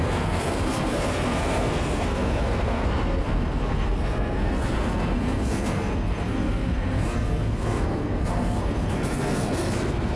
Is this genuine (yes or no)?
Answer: no